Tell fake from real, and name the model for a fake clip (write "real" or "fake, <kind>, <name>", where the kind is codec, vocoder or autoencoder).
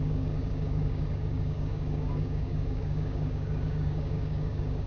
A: fake, codec, DAC